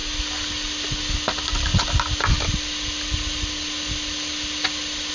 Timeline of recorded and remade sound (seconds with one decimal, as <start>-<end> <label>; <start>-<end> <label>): 0.0-5.1 recorded